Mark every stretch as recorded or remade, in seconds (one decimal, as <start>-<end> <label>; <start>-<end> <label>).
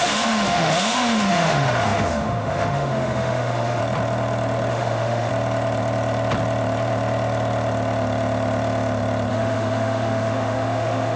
0.0-3.8 remade; 3.8-4.7 recorded; 4.7-5.3 remade; 5.3-9.3 recorded; 9.3-11.2 remade